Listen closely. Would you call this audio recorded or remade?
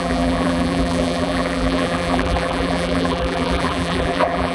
remade